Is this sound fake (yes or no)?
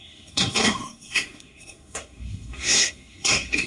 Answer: yes